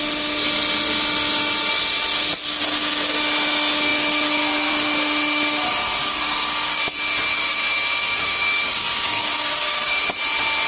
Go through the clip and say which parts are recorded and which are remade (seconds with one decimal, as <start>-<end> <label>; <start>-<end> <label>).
0.0-2.5 recorded; 2.5-3.2 remade; 3.2-6.0 recorded; 6.0-6.8 remade; 6.8-7.3 recorded; 7.3-10.0 remade; 10.0-10.7 recorded